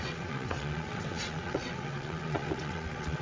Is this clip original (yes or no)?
no